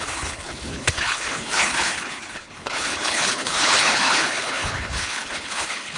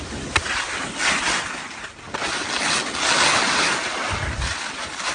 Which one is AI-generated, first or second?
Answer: first